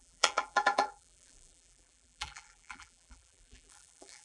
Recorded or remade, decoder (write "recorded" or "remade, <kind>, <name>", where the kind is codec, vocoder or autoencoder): remade, vocoder, BigVGAN v2